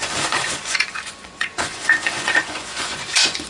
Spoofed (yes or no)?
yes